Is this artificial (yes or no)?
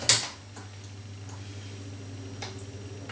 no